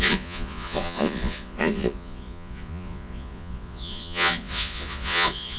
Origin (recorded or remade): remade